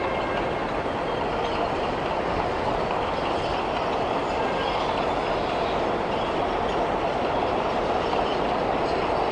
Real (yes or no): yes